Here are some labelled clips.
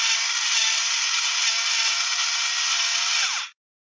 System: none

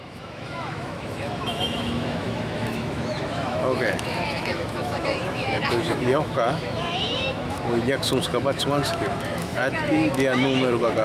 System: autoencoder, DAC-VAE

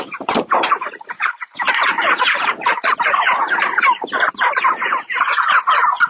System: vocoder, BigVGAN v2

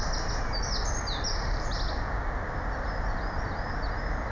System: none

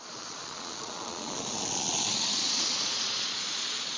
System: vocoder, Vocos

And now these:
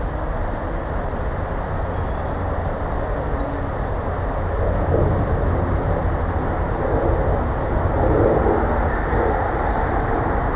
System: none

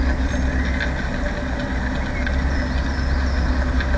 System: none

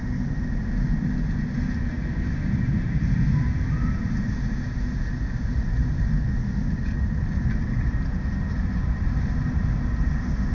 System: none